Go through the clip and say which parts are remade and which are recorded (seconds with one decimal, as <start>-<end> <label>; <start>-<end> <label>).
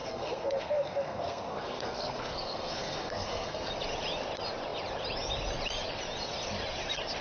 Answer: 0.0-3.7 remade; 3.7-7.2 recorded